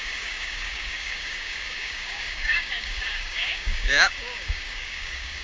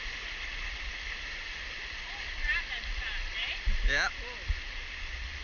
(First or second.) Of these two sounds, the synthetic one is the first